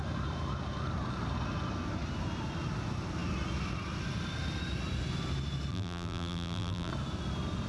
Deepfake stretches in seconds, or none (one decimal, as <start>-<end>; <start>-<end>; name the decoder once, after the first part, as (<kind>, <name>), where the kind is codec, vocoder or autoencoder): 5.7-6.9 (vocoder, BigVGAN v2)